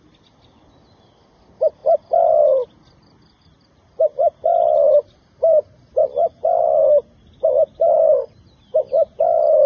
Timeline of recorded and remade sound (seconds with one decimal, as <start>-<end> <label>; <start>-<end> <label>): 0.0-1.8 recorded; 1.8-2.4 remade; 2.4-9.7 recorded